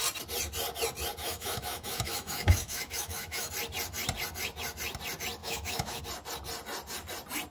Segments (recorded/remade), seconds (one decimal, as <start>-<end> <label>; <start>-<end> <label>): 0.0-1.2 recorded; 1.2-3.5 remade; 3.5-5.4 recorded; 5.4-6.0 remade; 6.0-7.5 recorded